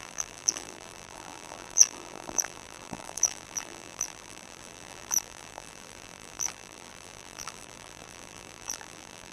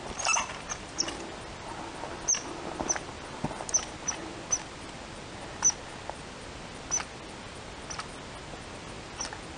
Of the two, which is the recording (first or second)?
second